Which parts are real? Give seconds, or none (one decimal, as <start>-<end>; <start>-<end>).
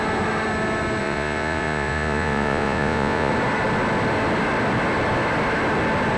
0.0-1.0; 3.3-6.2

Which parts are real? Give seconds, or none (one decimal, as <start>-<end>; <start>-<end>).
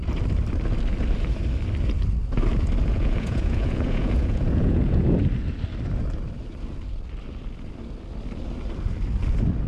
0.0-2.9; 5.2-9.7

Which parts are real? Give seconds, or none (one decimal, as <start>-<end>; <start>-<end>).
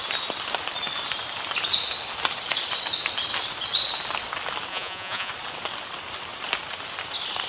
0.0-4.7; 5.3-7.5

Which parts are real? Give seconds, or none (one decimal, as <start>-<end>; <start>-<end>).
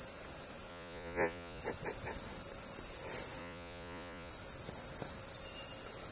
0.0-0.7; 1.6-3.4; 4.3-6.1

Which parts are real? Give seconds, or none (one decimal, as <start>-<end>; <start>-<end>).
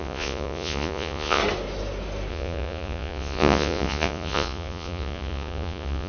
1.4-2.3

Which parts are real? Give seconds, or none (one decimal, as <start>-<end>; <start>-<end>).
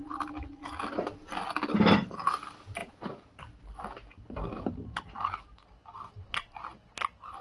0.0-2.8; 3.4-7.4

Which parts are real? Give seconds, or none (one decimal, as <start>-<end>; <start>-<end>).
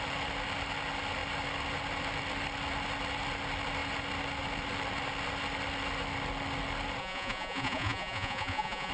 0.0-7.0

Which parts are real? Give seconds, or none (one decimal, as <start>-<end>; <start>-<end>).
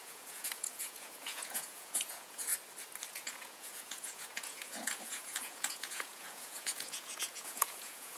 2.5-3.1